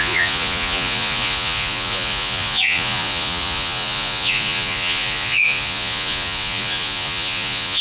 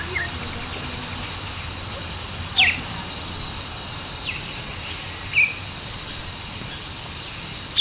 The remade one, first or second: first